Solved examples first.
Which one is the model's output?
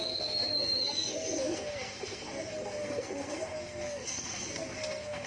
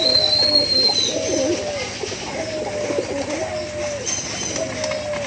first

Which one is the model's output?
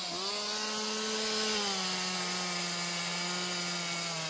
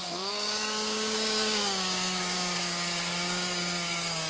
second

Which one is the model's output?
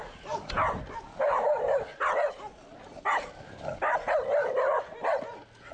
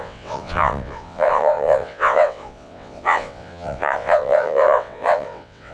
second